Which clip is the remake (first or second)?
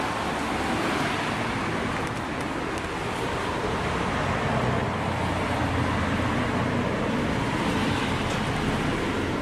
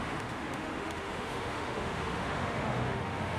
second